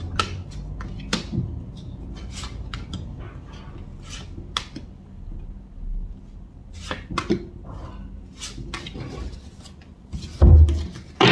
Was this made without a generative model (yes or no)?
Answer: yes